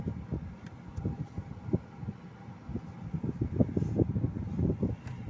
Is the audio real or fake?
real